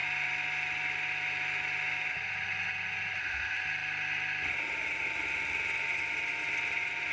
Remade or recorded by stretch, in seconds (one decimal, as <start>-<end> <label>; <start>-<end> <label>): 0.0-7.1 recorded